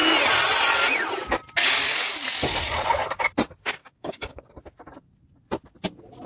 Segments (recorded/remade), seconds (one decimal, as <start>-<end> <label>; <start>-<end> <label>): 0.0-1.6 recorded; 1.6-2.1 remade; 2.1-3.8 recorded; 3.8-4.4 remade; 4.4-6.3 recorded